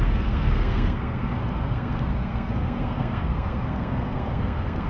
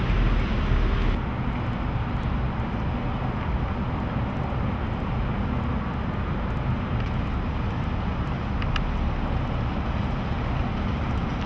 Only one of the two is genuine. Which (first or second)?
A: second